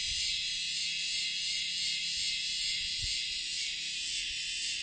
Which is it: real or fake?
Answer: real